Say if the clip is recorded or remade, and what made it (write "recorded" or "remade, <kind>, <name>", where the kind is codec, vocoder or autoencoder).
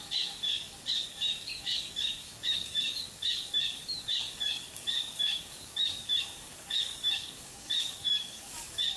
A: remade, codec, DAC